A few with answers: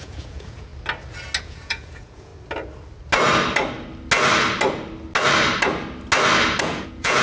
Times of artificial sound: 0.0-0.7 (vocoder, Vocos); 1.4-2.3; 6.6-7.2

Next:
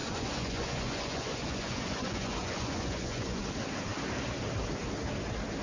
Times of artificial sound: 0.0-3.4 (vocoder, Vocos)

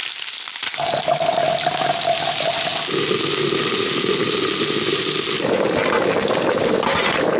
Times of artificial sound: none

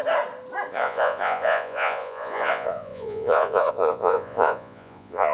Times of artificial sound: 0.7-5.3 (vocoder, Vocos)

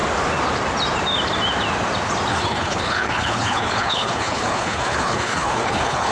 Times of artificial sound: 2.3-6.1 (codec, HILCodec)

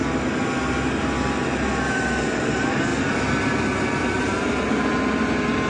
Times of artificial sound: none

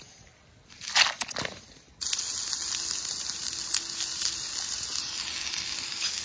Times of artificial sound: none

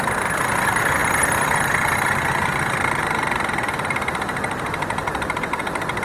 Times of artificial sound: 5.0-5.6 (vocoder, BigVGAN v2)